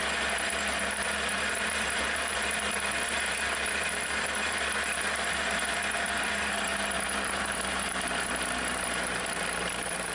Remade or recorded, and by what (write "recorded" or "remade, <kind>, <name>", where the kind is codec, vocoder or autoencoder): remade, vocoder, BigVGAN v2